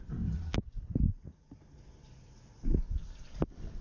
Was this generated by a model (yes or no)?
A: no